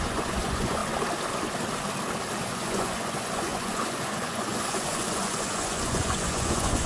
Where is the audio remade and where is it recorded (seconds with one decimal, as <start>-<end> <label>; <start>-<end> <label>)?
0.0-0.8 remade; 0.8-2.4 recorded; 2.4-6.9 remade